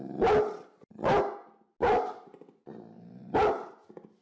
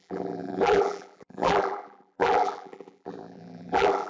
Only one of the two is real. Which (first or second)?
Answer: first